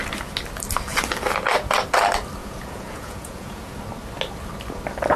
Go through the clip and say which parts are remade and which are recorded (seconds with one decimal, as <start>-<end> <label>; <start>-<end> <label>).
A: 0.0-2.4 recorded; 2.4-3.7 remade; 3.7-5.2 recorded